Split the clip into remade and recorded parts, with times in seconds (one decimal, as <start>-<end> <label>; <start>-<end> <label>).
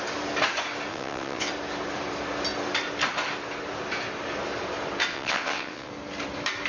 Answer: 0.0-0.9 recorded; 0.9-1.5 remade; 1.5-5.1 recorded; 5.1-5.9 remade; 5.9-6.7 recorded